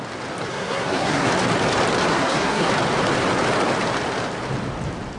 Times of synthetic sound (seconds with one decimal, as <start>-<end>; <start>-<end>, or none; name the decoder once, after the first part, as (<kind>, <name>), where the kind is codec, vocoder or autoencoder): 0.5-1.3 (codec, SNAC); 2.1-2.7